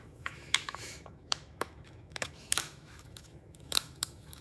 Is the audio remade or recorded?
remade